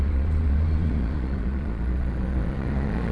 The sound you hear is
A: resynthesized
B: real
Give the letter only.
A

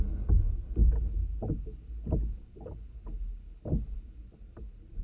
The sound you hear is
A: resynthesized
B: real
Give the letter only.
B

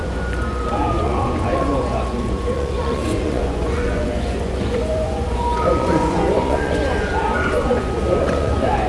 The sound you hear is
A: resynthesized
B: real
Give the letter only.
A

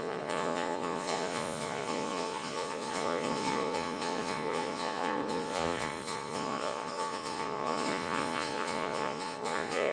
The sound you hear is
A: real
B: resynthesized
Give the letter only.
B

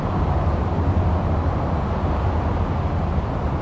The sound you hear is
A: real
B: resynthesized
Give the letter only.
A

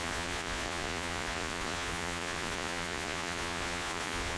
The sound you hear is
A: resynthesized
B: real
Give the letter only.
A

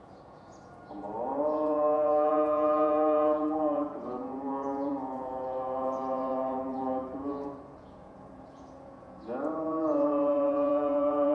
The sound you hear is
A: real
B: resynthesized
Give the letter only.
B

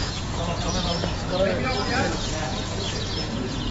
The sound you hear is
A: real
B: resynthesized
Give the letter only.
B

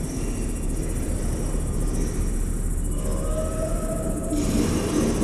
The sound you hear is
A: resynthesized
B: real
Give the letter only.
B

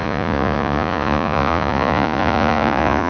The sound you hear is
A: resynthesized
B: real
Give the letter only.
A